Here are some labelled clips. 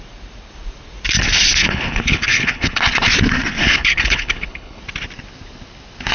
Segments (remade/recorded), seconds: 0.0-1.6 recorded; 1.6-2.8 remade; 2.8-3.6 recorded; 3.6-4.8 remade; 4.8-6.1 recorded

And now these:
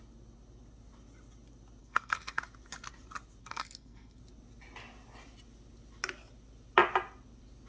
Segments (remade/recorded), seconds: 0.0-1.8 recorded; 1.8-2.4 remade; 2.4-3.4 recorded; 3.4-4.2 remade; 4.2-7.7 recorded

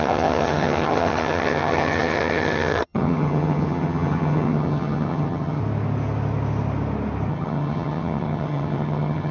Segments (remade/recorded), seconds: 0.0-5.6 remade; 5.6-7.3 recorded; 7.3-9.3 remade